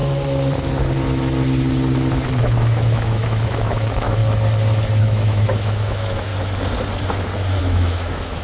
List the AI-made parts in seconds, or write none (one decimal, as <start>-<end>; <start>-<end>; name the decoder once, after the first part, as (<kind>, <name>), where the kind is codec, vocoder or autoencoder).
2.4-4.2 (autoencoder, DAC-VAE); 5.0-6.3; 7.6-8.4